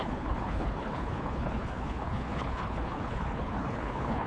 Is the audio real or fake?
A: fake